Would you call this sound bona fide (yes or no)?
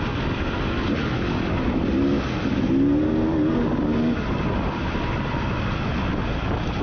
yes